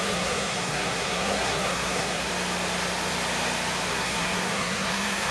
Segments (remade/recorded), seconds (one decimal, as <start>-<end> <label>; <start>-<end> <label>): 0.0-2.3 remade; 2.3-3.9 recorded; 3.9-5.3 remade

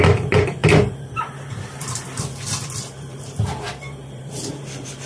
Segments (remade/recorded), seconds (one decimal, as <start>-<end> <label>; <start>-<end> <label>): 0.0-5.1 remade

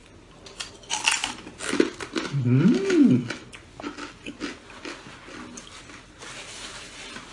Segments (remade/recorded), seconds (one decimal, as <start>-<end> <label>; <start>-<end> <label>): 0.0-7.3 recorded

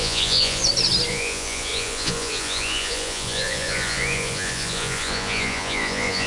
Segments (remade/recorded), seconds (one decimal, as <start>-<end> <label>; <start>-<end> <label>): 0.0-0.6 remade; 0.6-1.1 recorded; 1.1-6.3 remade